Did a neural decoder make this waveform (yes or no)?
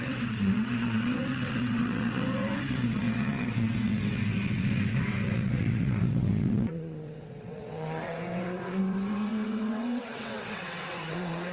yes